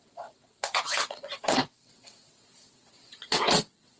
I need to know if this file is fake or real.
fake